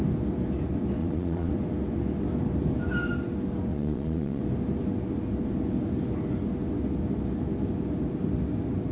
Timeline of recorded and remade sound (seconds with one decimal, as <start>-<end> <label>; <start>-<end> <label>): 0.0-1.0 recorded; 1.0-1.5 remade; 1.5-3.7 recorded; 3.7-4.4 remade; 4.4-8.9 recorded

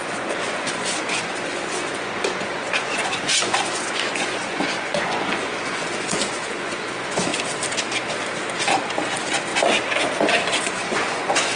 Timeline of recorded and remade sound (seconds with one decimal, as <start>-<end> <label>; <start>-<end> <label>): 0.0-7.3 remade; 7.3-9.1 recorded; 9.1-9.5 remade; 9.5-10.6 recorded; 10.6-11.6 remade

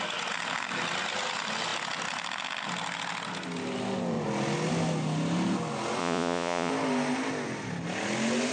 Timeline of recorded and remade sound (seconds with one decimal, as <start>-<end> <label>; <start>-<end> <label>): 0.0-6.0 recorded; 6.0-6.7 remade; 6.7-8.5 recorded

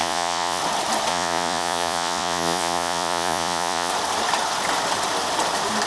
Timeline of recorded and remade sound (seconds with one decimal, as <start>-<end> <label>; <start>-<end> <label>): 0.0-0.6 remade; 0.6-1.1 recorded; 1.1-3.9 remade; 3.9-5.9 recorded

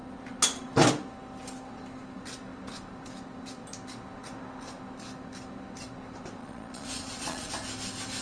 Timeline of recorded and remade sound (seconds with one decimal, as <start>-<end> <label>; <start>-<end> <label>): 0.0-6.4 recorded; 6.4-7.5 remade; 7.5-8.2 recorded

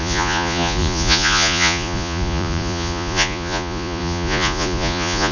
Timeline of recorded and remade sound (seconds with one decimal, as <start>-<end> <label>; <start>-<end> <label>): 0.0-5.3 remade

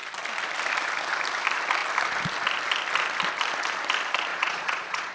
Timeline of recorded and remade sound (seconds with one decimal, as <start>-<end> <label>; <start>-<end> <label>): 0.0-4.3 recorded; 4.3-5.1 remade